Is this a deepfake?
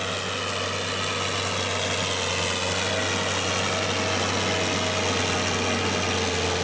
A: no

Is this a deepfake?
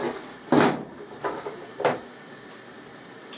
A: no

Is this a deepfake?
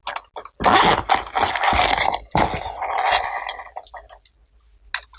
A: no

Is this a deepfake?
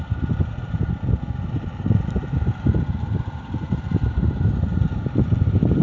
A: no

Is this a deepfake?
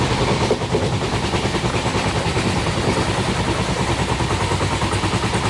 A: no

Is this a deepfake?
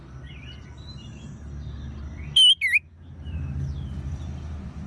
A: no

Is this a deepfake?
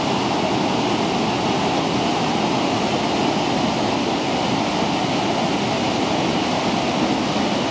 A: no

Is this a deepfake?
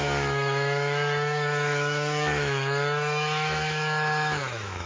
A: yes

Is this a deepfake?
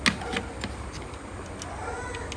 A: no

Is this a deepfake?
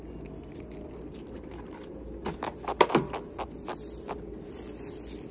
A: no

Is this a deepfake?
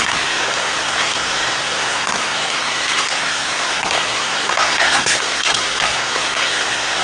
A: yes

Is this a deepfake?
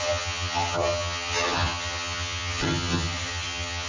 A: yes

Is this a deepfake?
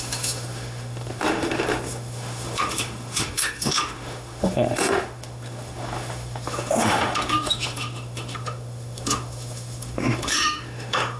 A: yes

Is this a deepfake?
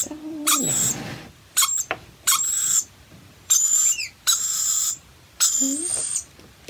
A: yes